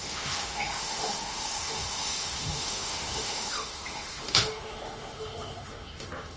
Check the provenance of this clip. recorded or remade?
remade